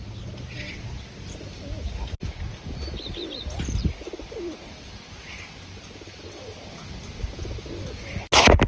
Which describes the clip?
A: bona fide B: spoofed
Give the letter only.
A